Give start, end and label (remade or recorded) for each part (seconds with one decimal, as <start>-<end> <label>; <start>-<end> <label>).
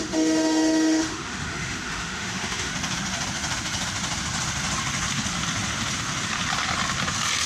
0.0-2.7 remade; 2.7-7.5 recorded